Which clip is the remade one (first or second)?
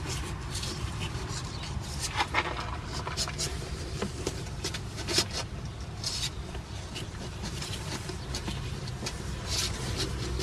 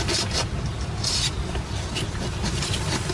first